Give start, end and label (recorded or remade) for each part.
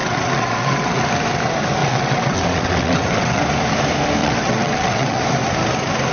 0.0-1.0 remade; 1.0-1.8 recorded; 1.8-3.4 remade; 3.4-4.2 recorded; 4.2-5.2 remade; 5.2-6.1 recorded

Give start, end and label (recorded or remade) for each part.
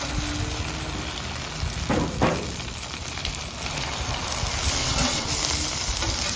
0.0-4.8 recorded; 4.8-5.3 remade; 5.3-6.4 recorded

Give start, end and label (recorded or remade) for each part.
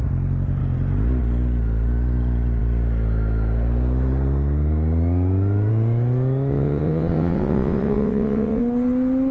0.0-6.5 recorded; 6.5-8.6 remade; 8.6-9.3 recorded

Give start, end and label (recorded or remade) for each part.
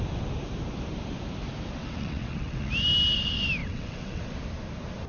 0.0-1.8 recorded; 1.8-2.7 remade; 2.7-3.6 recorded; 3.6-4.2 remade; 4.2-5.1 recorded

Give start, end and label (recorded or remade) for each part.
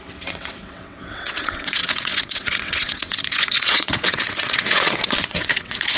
0.0-6.0 remade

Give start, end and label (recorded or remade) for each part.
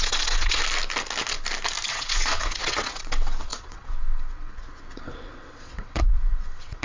0.0-0.6 remade; 0.6-1.9 recorded; 1.9-6.8 remade